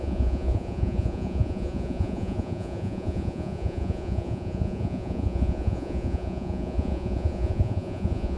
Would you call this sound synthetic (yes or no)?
yes